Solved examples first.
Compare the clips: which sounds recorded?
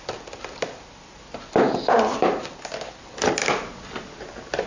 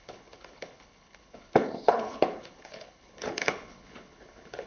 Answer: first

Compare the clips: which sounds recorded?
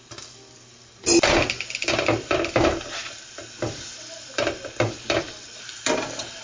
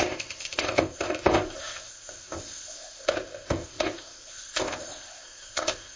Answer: first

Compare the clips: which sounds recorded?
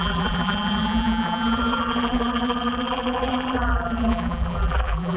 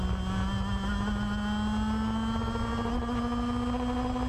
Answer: second